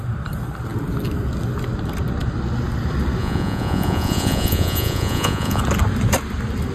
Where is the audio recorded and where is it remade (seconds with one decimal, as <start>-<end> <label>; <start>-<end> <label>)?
0.0-3.2 recorded; 3.2-5.6 remade; 5.6-6.7 recorded